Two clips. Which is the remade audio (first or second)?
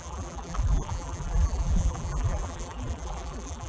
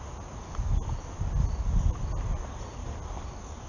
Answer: first